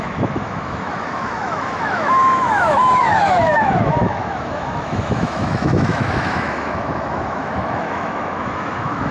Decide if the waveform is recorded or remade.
remade